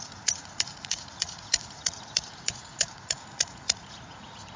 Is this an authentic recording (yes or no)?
no